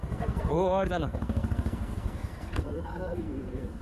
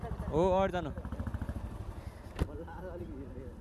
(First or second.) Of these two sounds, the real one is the second